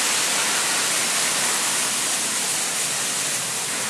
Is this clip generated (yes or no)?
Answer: no